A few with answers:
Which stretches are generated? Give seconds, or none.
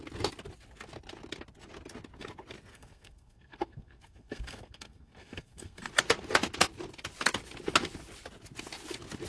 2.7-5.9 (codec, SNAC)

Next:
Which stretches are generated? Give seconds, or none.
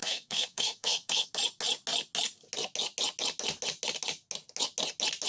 0.0-1.3 (codec, SNAC)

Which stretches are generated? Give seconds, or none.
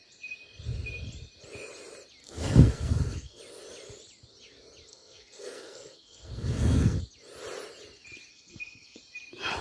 2.2-3.4 (codec, SNAC); 4.9-7.0; 8.3-9.0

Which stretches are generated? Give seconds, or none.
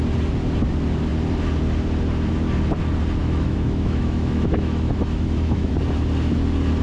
3.2-5.7 (autoencoder, DAC-VAE)